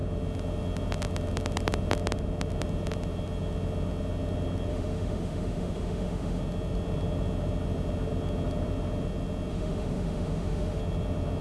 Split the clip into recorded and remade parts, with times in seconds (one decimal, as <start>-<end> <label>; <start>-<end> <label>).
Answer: 0.0-4.7 recorded; 4.7-6.4 remade; 6.4-9.5 recorded; 9.5-10.8 remade; 10.8-11.4 recorded